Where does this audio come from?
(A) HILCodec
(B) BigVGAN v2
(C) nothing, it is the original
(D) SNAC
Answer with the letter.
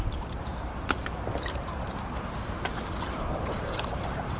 B